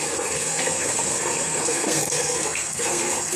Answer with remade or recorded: remade